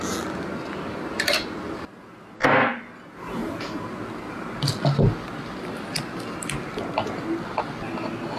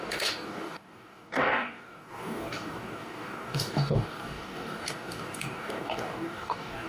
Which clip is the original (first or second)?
first